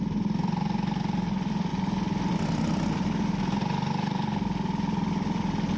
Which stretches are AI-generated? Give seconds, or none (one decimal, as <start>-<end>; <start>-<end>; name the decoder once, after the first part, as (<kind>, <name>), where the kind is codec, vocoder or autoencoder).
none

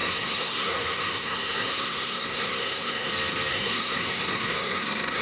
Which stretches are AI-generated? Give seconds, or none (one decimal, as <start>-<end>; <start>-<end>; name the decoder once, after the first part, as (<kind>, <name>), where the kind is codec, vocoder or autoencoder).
0.0-3.1 (codec, SNAC); 3.5-5.2

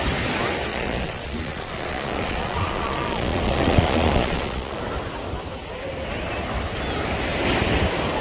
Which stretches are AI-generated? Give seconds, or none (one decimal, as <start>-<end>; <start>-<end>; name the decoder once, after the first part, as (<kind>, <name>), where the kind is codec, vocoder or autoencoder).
0.7-4.8 (vocoder, Vocos)

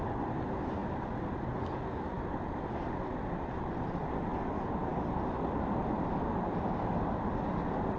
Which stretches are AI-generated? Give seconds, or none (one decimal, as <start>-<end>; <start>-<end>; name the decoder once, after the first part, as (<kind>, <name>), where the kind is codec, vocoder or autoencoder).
none

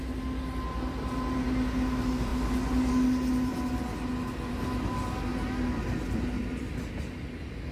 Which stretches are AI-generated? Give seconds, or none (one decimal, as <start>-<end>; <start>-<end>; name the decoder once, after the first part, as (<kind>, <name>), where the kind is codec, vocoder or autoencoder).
none